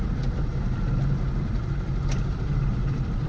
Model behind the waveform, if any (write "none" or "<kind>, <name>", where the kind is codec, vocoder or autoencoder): none